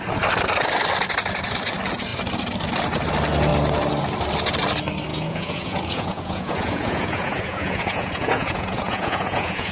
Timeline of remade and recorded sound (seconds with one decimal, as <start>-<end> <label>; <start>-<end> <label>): 0.0-5.1 recorded; 5.1-9.7 remade